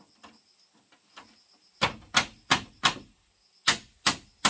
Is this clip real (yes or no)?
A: yes